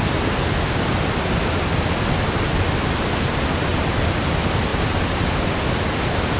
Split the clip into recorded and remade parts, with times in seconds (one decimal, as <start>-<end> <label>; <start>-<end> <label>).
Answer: 0.0-3.7 recorded; 3.7-4.3 remade; 4.3-4.7 recorded; 4.7-5.5 remade; 5.5-6.4 recorded